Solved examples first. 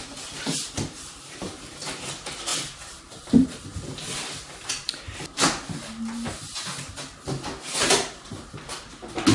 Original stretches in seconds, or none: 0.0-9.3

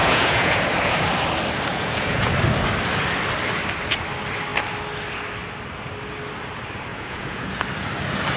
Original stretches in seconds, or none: 0.7-1.7; 2.3-6.9; 7.5-8.4

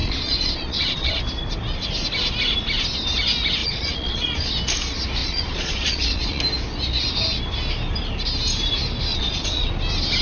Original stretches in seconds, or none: 1.2-3.6; 4.5-5.2; 6.4-9.1; 9.7-10.2

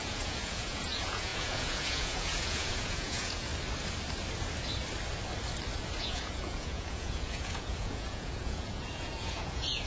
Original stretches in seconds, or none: 3.5-6.0